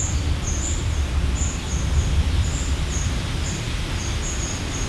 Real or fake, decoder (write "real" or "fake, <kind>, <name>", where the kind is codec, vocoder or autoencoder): fake, vocoder, BigVGAN v2